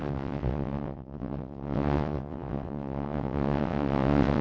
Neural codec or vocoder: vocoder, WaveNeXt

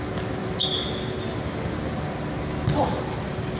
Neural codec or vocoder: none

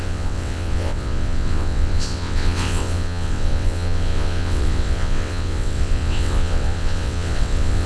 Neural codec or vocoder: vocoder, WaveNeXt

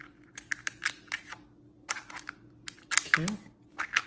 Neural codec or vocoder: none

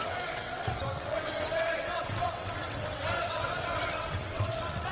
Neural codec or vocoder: vocoder, WaveNeXt